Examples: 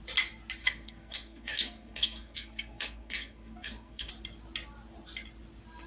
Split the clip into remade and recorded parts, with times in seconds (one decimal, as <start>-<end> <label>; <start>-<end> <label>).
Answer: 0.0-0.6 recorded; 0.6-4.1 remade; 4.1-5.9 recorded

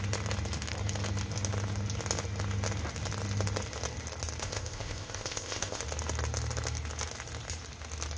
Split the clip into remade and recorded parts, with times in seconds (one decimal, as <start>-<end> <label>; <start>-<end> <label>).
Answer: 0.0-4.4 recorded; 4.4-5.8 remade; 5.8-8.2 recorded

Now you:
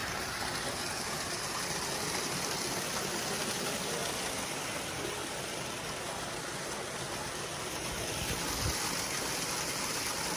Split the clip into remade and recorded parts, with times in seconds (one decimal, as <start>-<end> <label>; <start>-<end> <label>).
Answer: 0.0-7.5 recorded; 7.5-8.1 remade; 8.1-10.4 recorded

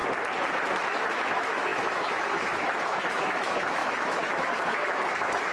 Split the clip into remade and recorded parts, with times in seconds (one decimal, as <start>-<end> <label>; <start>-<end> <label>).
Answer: 0.0-0.8 recorded; 0.8-5.5 remade

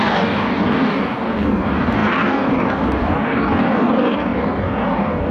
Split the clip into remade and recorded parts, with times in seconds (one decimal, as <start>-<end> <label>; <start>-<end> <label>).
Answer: 0.0-5.3 remade